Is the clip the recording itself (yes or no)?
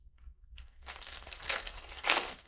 no